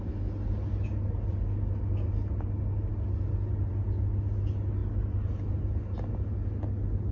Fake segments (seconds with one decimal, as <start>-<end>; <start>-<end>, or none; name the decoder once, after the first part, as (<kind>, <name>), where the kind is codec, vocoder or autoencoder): none